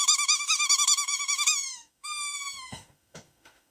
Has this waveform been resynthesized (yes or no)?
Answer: yes